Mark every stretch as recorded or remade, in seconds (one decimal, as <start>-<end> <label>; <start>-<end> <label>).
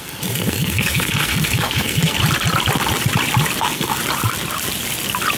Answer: 0.0-2.2 remade; 2.2-3.6 recorded; 3.6-4.0 remade; 4.0-5.4 recorded